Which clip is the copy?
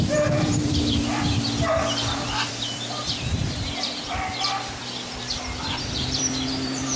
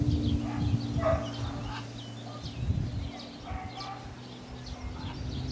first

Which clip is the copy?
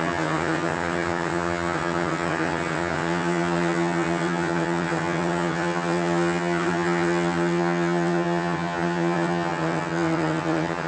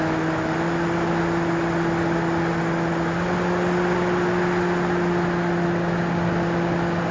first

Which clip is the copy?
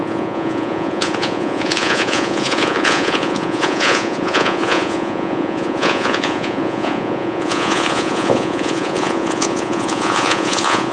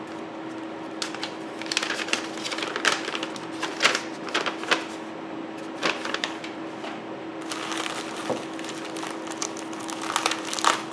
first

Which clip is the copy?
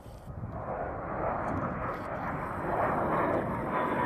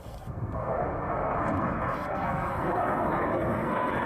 second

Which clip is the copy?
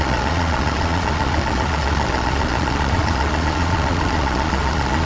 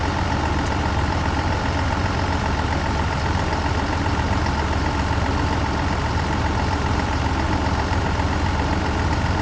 first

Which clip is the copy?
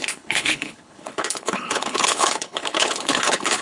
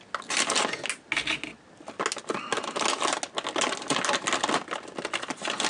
first